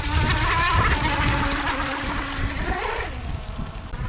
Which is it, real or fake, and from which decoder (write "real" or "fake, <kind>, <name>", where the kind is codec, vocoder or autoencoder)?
real